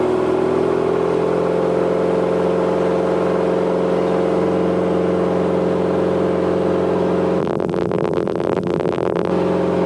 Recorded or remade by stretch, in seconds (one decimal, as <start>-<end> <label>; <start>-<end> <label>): 0.0-7.4 recorded; 7.4-9.3 remade; 9.3-9.9 recorded